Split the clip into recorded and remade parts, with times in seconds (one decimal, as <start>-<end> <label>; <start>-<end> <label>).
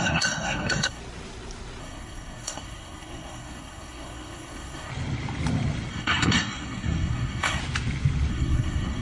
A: 0.0-1.0 remade; 1.0-1.8 recorded; 1.8-4.9 remade; 4.9-5.9 recorded; 5.9-7.6 remade; 7.6-8.3 recorded; 8.3-9.0 remade